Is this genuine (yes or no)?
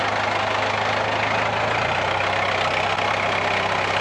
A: yes